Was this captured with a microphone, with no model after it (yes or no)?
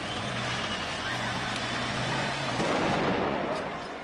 no